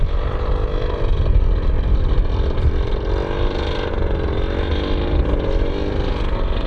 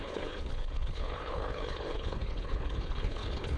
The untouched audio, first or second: first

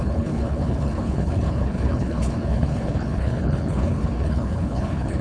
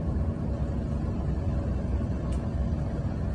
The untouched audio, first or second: second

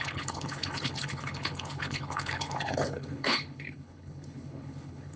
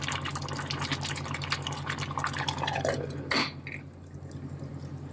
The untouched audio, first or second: second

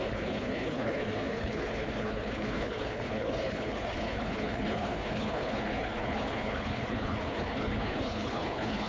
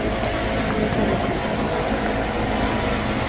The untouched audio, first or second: second